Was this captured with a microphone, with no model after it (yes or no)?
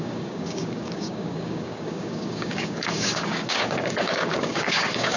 no